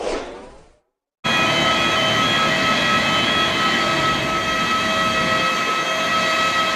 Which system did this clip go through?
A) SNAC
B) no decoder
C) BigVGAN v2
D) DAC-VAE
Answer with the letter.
B